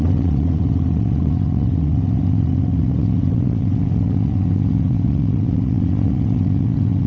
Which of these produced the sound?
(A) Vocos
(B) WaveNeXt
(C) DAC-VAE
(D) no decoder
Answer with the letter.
B